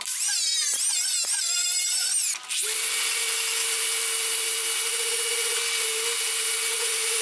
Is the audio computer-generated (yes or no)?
no